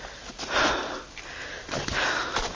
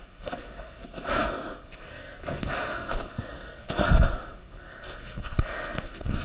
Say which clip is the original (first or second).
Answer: first